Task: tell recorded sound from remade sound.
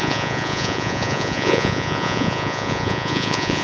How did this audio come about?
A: remade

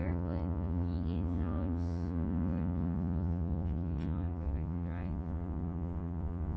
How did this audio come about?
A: remade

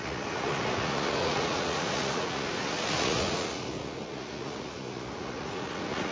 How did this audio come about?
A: remade